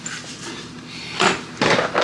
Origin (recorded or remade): recorded